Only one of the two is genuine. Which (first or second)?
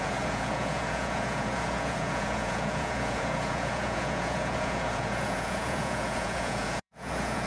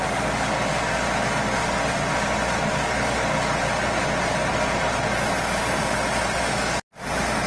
second